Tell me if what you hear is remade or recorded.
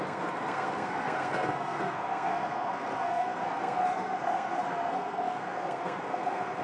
remade